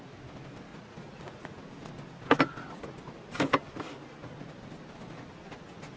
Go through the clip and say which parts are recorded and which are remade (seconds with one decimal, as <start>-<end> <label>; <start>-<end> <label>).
0.0-0.7 recorded; 0.7-1.6 remade; 1.6-6.0 recorded